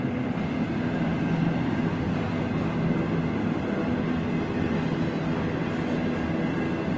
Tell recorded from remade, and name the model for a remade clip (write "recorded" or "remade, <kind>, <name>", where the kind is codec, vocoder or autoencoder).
recorded